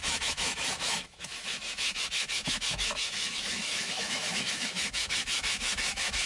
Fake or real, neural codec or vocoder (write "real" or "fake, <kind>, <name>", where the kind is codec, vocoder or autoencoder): fake, autoencoder, DAC-VAE